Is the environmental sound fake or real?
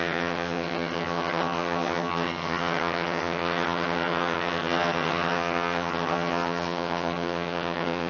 fake